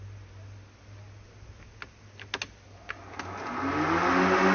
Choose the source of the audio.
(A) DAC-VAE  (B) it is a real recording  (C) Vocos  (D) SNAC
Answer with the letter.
B